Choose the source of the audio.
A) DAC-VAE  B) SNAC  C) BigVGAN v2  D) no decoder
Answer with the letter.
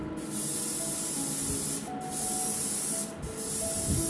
D